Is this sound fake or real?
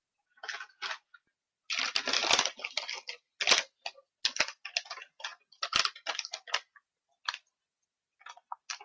real